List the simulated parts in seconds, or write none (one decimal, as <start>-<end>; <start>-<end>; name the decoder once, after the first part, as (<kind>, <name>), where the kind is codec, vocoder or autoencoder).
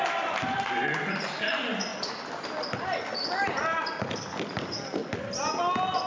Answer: 0.0-5.0 (vocoder, BigVGAN v2)